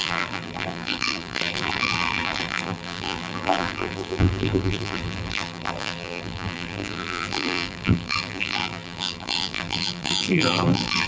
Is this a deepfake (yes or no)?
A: yes